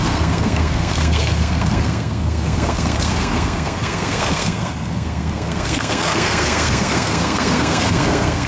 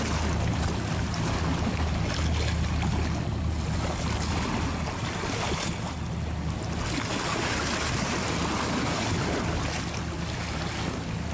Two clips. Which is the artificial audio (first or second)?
first